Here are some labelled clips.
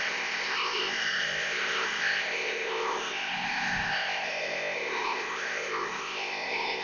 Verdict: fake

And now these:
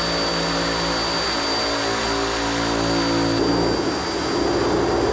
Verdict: real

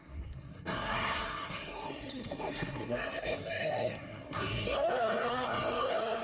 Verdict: fake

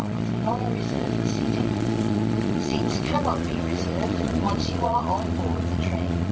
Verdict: fake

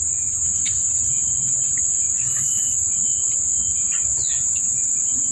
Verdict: real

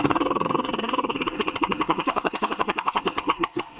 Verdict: fake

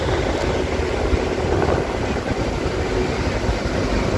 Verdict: real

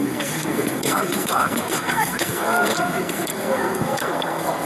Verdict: fake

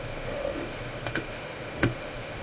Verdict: fake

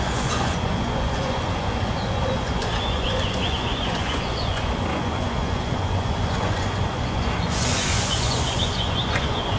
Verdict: fake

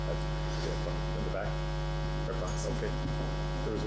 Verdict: real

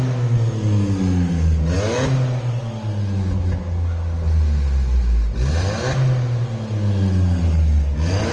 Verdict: real